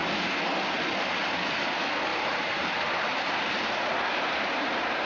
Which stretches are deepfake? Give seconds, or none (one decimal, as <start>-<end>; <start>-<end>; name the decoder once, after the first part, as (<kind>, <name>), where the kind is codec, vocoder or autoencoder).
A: 1.2-1.7 (vocoder, BigVGAN v2); 2.1-5.1